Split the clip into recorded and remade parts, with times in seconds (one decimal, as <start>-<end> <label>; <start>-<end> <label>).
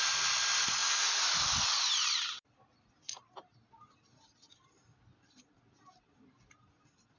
0.0-7.2 recorded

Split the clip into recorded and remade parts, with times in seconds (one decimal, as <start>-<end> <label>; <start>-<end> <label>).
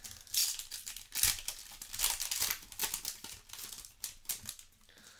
0.0-5.2 recorded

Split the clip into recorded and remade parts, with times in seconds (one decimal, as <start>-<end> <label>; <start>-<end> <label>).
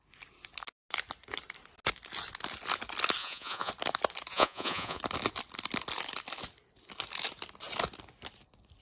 0.0-3.2 recorded; 3.2-3.7 remade; 3.7-4.3 recorded; 4.3-5.0 remade; 5.0-8.8 recorded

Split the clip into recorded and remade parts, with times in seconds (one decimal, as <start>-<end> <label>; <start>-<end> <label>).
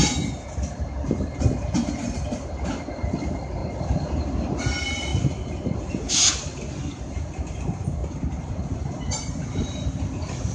0.0-10.5 remade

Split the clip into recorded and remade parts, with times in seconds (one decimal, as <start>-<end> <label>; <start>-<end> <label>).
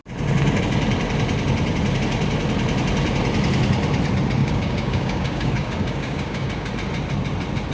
0.0-4.4 recorded; 4.4-6.7 remade; 6.7-7.7 recorded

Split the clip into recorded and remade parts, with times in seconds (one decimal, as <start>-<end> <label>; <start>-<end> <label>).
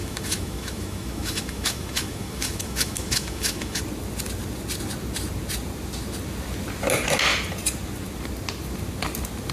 0.0-3.8 remade; 3.8-9.5 recorded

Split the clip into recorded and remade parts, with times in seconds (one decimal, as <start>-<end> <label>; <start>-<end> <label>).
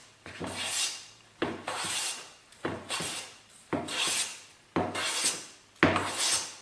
0.0-3.8 remade; 3.8-6.6 recorded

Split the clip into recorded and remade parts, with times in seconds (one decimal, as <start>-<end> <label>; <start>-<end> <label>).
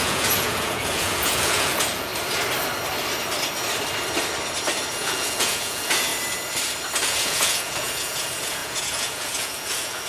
0.0-2.1 remade; 2.1-4.9 recorded; 4.9-6.1 remade; 6.1-7.0 recorded; 7.0-10.1 remade